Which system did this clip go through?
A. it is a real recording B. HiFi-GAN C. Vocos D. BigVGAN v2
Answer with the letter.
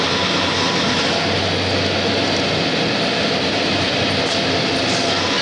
A